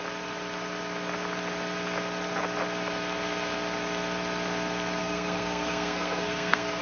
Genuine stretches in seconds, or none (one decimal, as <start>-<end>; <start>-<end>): 0.0-5.0